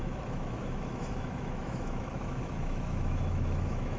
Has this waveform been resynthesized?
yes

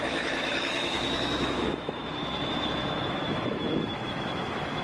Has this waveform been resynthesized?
yes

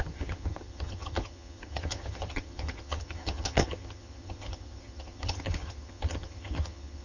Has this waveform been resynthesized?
yes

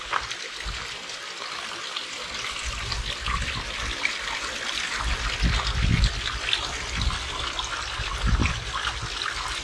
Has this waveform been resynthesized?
no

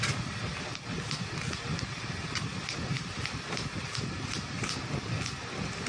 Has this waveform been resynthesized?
no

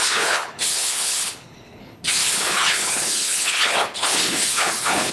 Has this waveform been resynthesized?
yes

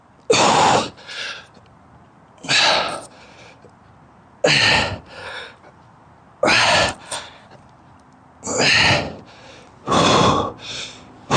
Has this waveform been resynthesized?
no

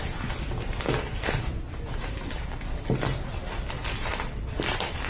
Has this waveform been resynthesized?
yes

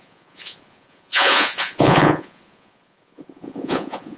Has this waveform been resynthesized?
yes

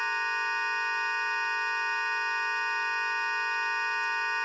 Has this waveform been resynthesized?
no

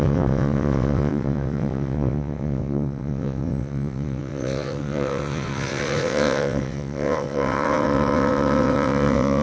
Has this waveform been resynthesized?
yes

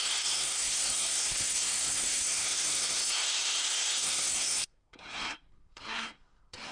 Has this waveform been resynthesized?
yes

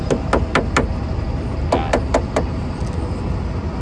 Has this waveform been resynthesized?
no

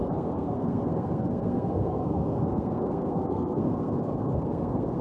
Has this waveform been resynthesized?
yes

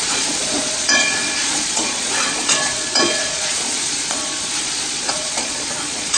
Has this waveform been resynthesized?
yes